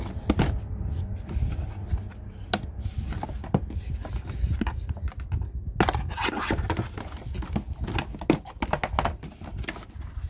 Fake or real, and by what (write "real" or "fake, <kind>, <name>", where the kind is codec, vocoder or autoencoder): real